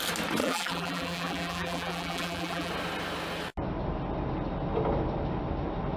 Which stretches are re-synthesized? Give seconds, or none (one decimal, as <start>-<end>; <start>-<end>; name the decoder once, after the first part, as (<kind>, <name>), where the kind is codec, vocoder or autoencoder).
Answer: 0.4-2.7 (vocoder, BigVGAN v2)